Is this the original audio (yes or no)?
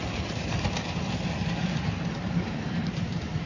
no